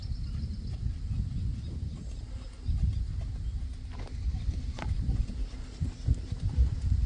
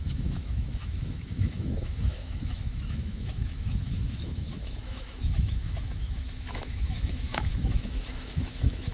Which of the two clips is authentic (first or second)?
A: first